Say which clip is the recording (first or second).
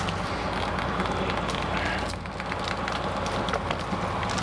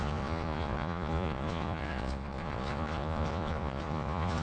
first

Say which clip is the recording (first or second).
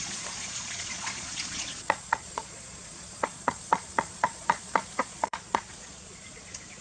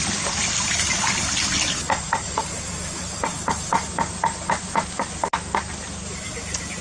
second